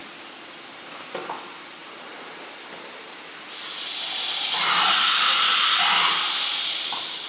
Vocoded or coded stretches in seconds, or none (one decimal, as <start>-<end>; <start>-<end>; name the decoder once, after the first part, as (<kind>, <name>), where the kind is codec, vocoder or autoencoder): none